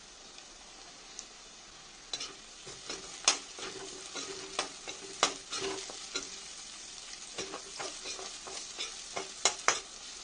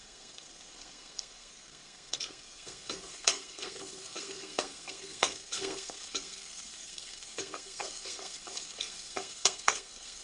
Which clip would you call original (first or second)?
first